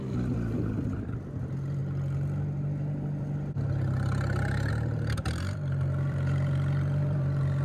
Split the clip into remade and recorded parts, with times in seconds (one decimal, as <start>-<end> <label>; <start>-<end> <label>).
0.0-1.8 remade; 1.8-4.7 recorded; 4.7-7.6 remade